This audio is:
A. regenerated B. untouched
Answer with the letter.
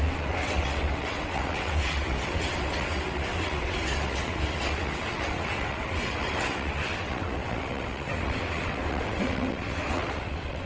A